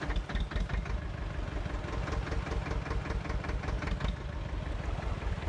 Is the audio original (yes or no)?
yes